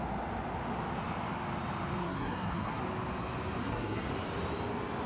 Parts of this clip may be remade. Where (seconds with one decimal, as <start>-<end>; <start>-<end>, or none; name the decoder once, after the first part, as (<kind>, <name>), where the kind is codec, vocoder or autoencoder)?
2.0-2.8 (codec, SNAC); 3.6-4.1